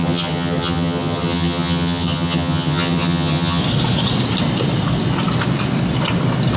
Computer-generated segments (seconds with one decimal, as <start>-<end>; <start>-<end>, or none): 0.0-3.6